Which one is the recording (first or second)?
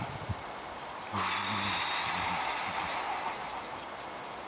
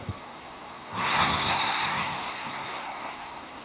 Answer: first